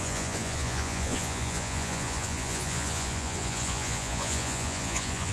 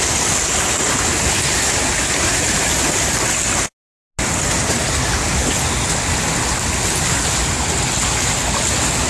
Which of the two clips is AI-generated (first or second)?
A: first